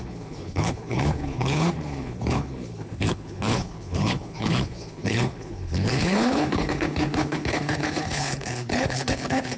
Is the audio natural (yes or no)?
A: no